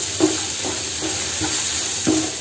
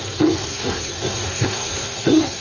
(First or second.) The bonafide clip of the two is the first